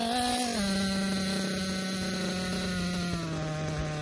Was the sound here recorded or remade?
recorded